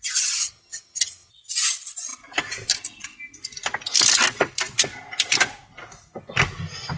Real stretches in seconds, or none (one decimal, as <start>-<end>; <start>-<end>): 0.0-0.4; 1.3-7.0